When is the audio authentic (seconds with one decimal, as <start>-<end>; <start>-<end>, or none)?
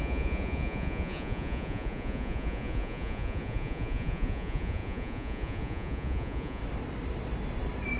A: 6.6-8.0